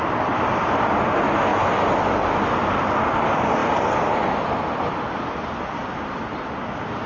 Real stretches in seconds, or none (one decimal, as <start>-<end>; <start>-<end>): 0.0-7.1